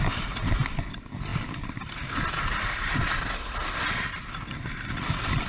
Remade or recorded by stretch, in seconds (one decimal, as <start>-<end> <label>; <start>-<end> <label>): 0.0-5.5 recorded